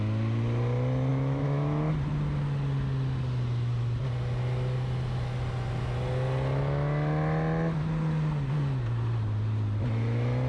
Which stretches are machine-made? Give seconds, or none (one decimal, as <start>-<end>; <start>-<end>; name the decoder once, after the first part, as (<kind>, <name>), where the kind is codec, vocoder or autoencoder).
1.1-1.9 (autoencoder, DAC-VAE)